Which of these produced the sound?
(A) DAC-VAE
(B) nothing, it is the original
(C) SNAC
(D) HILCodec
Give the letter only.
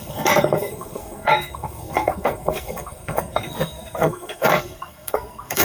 C